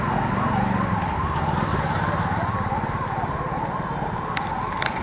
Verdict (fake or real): real